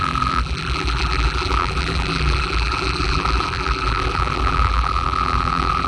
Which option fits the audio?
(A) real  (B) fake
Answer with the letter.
B